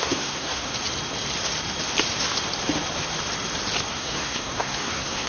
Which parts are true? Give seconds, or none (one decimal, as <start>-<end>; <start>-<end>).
0.7-3.9